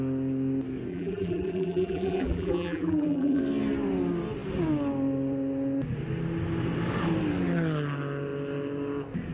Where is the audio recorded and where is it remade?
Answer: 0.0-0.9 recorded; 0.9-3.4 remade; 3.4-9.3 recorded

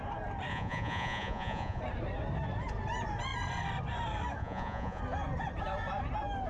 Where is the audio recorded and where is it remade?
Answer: 0.0-0.5 recorded; 0.5-1.8 remade; 1.8-4.4 recorded; 4.4-5.0 remade; 5.0-6.5 recorded

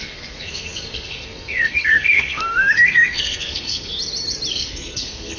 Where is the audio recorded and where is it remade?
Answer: 0.0-3.9 remade; 3.9-4.5 recorded; 4.5-5.4 remade

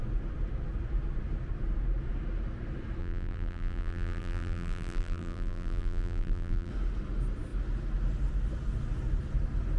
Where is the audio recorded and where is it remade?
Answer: 0.0-3.0 recorded; 3.0-6.7 remade; 6.7-9.8 recorded